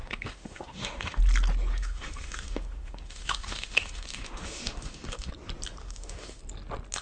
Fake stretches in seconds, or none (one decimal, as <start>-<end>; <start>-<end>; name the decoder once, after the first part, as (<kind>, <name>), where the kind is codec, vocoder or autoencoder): 0.0-1.2 (autoencoder, DAC-VAE); 1.7-5.3; 5.8-6.4